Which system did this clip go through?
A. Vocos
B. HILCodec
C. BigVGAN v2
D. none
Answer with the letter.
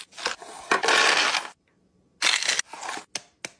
D